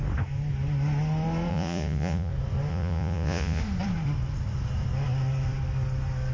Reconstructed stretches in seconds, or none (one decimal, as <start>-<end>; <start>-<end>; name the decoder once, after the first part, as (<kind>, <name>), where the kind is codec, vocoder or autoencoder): 1.5-2.3 (vocoder, Vocos); 2.7-3.6